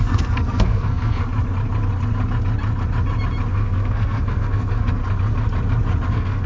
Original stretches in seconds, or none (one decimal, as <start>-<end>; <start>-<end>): 1.2-3.5; 5.0-6.1